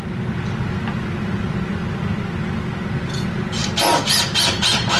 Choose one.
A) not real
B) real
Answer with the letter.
B